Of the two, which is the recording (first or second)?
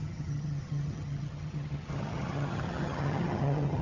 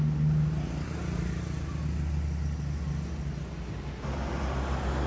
second